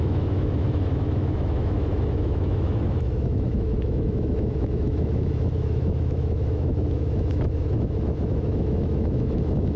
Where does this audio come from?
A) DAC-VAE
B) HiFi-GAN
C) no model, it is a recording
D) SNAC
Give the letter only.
A